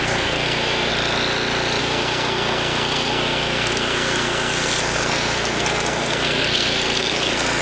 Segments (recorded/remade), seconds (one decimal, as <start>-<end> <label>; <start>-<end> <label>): 0.0-0.9 remade; 0.9-1.8 recorded; 1.8-7.6 remade

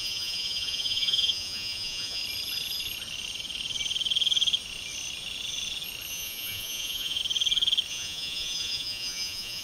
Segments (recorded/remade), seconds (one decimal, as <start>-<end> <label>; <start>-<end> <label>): 0.0-2.2 remade; 2.2-6.1 recorded; 6.1-7.2 remade; 7.2-7.9 recorded; 7.9-9.6 remade

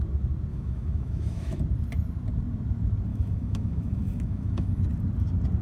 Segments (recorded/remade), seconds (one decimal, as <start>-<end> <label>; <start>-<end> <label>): 0.0-0.5 recorded; 0.5-1.6 remade; 1.6-3.1 recorded; 3.1-4.8 remade; 4.8-5.6 recorded

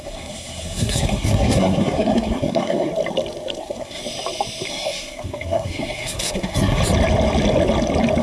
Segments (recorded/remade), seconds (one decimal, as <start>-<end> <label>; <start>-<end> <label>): 0.0-2.9 remade; 2.9-3.6 recorded; 3.6-4.0 remade; 4.0-4.7 recorded; 4.7-6.8 remade; 6.8-8.2 recorded

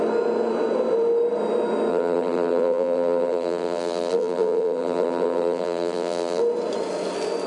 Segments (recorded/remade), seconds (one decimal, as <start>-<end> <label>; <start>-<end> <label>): 0.0-1.9 recorded; 1.9-6.4 remade; 6.4-7.5 recorded

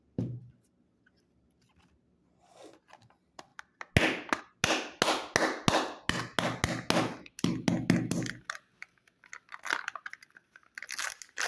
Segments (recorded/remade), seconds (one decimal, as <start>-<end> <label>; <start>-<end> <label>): 0.0-11.5 recorded

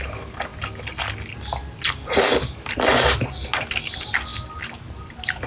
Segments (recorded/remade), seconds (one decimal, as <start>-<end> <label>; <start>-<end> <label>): 0.0-5.5 recorded

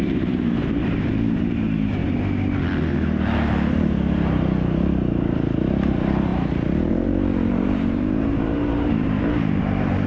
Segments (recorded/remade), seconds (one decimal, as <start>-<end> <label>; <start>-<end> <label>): 0.0-2.0 remade; 2.0-3.7 recorded; 3.7-10.1 remade